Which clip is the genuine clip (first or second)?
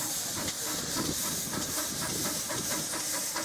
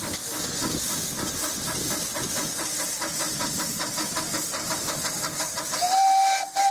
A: second